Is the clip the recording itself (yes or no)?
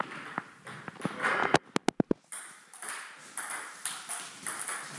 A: yes